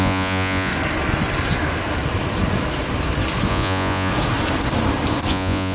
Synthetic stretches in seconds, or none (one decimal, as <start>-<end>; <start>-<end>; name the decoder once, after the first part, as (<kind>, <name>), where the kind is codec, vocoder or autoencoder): 0.0-0.7 (vocoder, Vocos); 3.5-4.1; 5.3-5.7